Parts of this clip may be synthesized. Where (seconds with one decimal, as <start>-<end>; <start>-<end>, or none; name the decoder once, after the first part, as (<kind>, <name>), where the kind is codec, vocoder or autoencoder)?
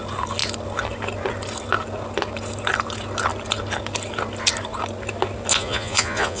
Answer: 5.5-6.4 (vocoder, Vocos)